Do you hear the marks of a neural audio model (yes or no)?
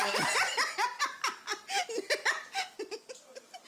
no